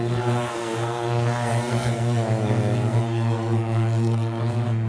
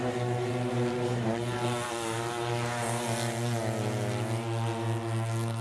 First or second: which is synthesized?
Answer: first